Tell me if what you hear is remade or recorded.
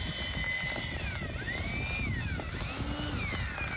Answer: recorded